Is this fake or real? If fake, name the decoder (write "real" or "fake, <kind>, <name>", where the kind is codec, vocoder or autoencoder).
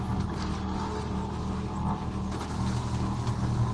real